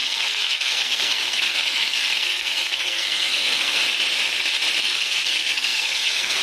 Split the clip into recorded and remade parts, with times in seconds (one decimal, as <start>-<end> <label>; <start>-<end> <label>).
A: 0.0-3.8 remade; 3.8-4.8 recorded; 4.8-6.4 remade